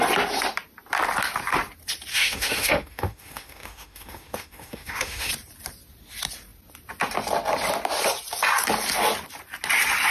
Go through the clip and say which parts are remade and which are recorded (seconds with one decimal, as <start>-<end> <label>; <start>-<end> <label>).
0.0-2.1 recorded; 2.1-5.3 remade; 5.3-10.1 recorded